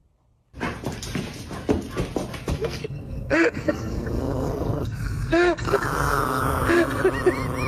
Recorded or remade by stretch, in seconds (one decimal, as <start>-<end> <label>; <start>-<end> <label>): 0.0-2.5 recorded; 2.5-7.0 remade; 7.0-7.7 recorded